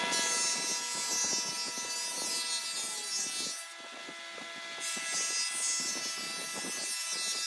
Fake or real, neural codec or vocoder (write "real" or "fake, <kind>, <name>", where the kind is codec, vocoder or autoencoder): real